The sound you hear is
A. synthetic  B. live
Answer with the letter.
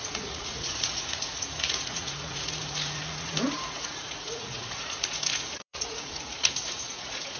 A